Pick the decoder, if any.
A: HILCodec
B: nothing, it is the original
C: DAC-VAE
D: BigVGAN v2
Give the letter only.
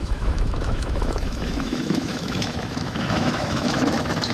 C